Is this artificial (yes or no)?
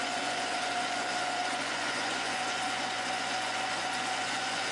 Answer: yes